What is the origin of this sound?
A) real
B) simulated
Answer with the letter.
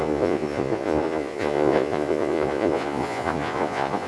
B